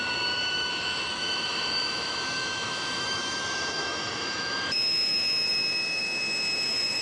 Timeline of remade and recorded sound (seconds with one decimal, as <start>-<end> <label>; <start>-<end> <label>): 0.0-7.0 remade